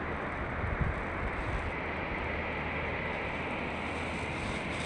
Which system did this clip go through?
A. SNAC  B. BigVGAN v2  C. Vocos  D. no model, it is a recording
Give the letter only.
D